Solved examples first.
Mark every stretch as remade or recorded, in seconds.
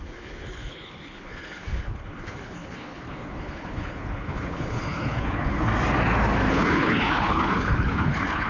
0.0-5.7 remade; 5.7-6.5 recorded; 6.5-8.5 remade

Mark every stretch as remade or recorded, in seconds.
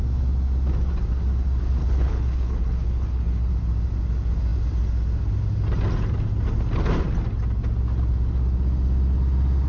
0.0-1.8 recorded; 1.8-3.5 remade; 3.5-9.7 recorded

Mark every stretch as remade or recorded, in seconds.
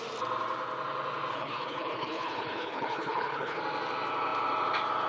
0.0-1.3 recorded; 1.3-3.6 remade; 3.6-5.1 recorded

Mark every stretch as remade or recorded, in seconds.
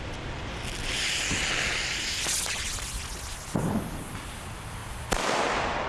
0.0-5.9 recorded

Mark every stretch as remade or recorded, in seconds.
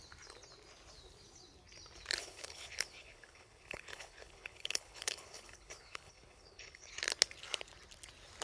0.0-2.2 recorded; 2.2-6.9 remade; 6.9-8.4 recorded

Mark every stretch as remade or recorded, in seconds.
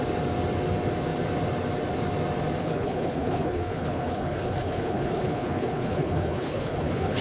0.0-2.6 recorded; 2.6-7.2 remade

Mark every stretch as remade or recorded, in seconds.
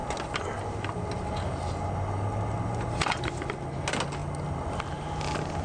0.0-5.6 recorded